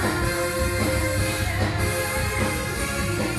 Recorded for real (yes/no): yes